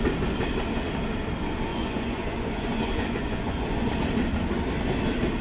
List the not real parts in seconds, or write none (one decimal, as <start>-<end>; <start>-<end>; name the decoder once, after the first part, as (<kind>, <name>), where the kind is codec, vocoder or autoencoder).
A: 1.7-3.9 (vocoder, Vocos)